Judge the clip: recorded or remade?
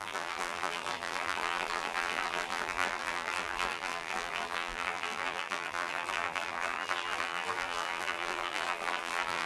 remade